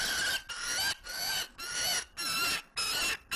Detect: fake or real real